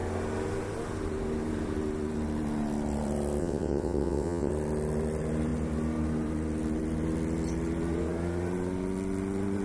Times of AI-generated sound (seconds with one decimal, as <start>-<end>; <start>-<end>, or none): 3.4-4.5